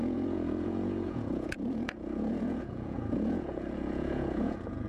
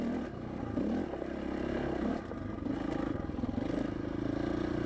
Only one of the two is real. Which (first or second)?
second